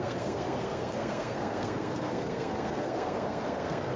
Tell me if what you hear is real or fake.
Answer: fake